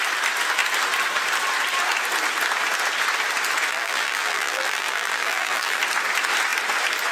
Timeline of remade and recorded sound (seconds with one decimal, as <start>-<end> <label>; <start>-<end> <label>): 0.0-3.7 recorded; 3.7-5.8 remade; 5.8-7.1 recorded